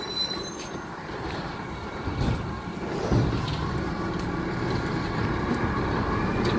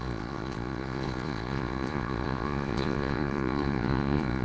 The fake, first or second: second